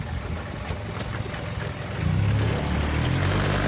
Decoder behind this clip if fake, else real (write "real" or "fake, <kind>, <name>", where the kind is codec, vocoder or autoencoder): real